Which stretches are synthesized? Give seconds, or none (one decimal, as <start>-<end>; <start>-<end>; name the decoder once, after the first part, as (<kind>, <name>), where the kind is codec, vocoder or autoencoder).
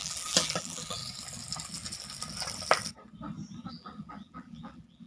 0.0-1.0 (vocoder, BigVGAN v2); 3.7-5.1